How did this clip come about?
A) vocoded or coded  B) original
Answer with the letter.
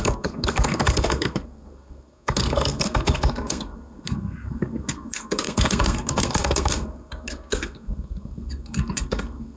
A